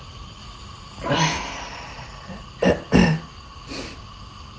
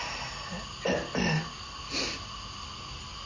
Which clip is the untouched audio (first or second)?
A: second